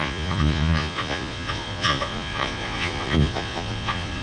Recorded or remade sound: remade